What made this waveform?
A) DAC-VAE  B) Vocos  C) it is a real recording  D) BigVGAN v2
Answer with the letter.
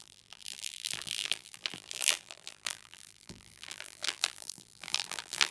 D